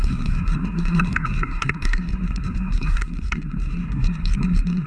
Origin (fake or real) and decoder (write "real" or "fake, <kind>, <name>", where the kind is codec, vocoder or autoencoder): fake, codec, SNAC